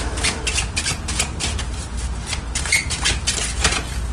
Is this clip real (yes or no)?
yes